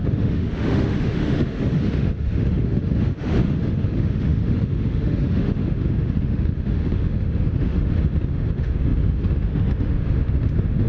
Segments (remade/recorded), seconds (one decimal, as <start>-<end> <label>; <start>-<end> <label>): 0.0-10.9 remade